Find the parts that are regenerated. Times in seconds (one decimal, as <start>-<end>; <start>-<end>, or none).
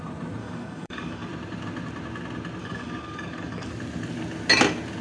0.4-1.3; 2.6-3.7